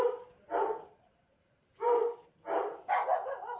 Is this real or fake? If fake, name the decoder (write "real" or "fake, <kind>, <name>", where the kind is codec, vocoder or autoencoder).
real